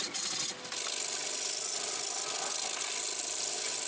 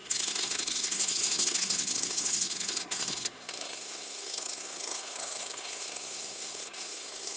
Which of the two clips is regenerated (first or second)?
second